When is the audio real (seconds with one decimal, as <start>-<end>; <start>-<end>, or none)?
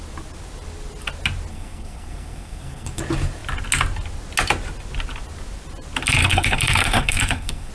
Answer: 0.0-1.5; 3.0-6.2